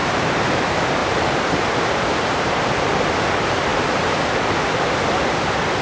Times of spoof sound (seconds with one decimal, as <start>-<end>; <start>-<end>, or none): 0.0-0.6; 1.0-2.8